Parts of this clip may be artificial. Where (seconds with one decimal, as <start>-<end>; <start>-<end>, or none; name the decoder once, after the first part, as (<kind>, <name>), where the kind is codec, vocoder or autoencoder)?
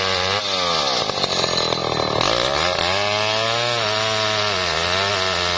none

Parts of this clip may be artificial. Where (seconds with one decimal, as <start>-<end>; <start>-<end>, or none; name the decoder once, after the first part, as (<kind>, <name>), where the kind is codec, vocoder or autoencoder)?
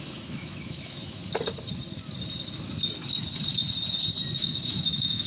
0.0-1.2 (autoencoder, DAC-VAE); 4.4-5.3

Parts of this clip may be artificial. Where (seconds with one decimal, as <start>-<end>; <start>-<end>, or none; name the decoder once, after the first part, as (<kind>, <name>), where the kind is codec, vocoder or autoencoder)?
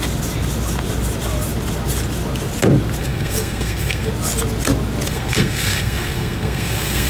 3.0-4.1 (codec, SNAC); 5.1-7.1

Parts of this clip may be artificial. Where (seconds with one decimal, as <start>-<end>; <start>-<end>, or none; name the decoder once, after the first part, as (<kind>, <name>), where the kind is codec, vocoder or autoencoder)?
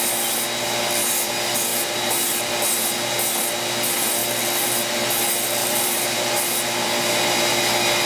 1.7-2.5 (vocoder, BigVGAN v2); 5.6-6.4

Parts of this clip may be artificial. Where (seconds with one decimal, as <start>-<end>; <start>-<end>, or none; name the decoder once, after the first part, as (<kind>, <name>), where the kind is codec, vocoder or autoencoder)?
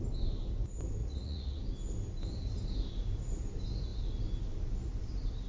1.0-1.6 (vocoder, Vocos)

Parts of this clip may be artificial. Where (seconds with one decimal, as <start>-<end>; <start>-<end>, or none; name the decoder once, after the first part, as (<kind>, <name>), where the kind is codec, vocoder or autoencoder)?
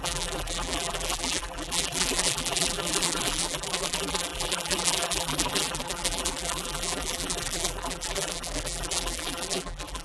0.0-10.0 (vocoder, BigVGAN v2)